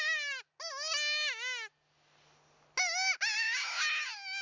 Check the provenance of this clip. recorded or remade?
recorded